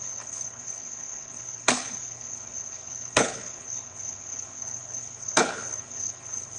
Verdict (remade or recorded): remade